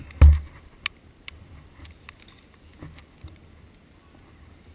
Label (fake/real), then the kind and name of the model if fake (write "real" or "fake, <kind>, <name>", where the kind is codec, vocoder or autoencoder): real